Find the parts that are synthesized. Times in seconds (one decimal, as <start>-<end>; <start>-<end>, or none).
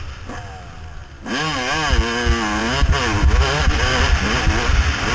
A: none